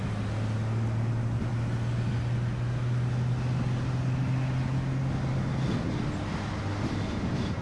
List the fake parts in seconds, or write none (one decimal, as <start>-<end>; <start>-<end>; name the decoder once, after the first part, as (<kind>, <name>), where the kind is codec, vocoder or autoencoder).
none